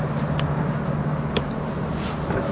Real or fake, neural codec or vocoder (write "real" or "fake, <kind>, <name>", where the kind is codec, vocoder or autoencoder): real